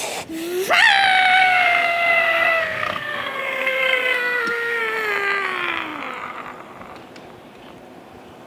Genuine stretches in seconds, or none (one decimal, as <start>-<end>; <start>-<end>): 0.0-1.4; 4.8-8.5